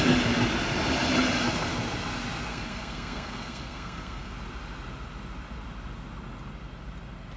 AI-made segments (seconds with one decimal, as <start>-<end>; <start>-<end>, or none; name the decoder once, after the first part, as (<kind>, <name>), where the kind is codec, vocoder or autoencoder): 2.5-4.3 (codec, SNAC)